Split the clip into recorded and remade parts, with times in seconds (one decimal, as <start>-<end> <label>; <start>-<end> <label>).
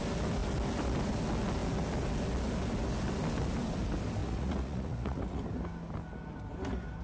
0.0-4.2 recorded; 4.2-5.4 remade; 5.4-7.0 recorded